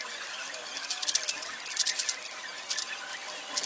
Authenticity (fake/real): real